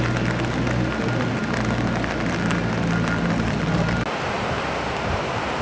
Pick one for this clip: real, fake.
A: real